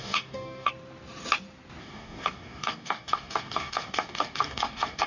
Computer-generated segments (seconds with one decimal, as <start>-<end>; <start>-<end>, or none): 0.0-0.7; 1.8-5.1